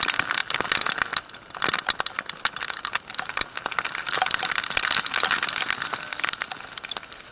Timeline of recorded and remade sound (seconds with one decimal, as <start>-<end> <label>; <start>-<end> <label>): 0.0-7.3 recorded